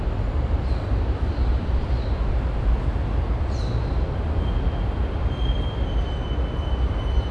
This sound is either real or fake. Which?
real